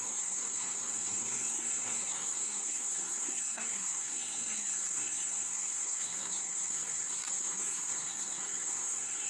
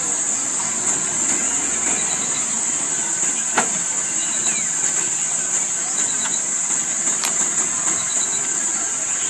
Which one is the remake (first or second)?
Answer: first